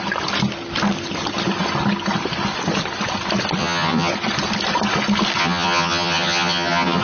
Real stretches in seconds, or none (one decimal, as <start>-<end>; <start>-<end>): 0.0-3.6; 4.1-5.4